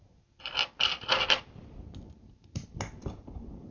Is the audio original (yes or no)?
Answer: yes